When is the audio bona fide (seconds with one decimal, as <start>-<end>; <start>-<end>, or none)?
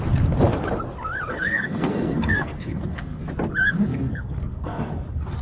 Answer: 0.0-1.3; 3.2-3.9; 4.9-5.4